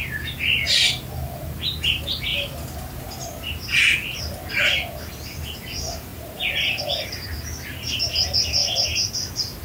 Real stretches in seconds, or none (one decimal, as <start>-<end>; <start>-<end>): 0.0-6.1; 7.1-8.6; 9.1-9.6